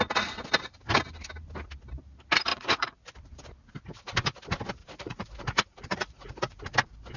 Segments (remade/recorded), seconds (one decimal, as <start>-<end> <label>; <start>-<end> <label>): 0.0-2.5 recorded; 2.5-3.0 remade; 3.0-4.8 recorded; 4.8-6.6 remade; 6.6-7.2 recorded